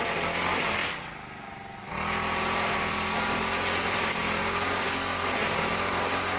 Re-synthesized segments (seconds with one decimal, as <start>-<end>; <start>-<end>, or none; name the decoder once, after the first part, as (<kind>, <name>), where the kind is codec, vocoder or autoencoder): 4.4-4.9 (codec, DAC)